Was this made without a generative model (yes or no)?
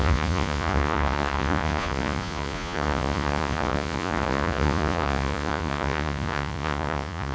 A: no